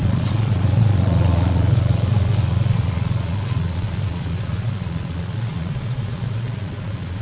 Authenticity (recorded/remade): remade